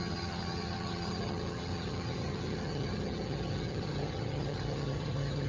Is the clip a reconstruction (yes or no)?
yes